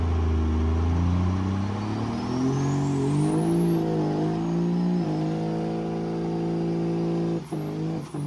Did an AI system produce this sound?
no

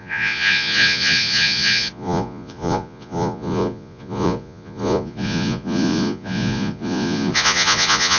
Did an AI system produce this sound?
yes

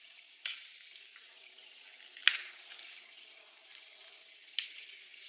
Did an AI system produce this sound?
no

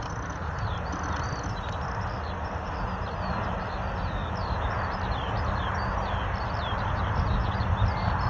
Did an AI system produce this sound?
no